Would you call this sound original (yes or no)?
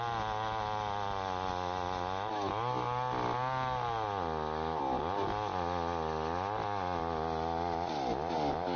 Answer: yes